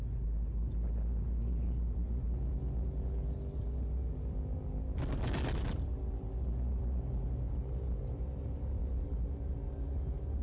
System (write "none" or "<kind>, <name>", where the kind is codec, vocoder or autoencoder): none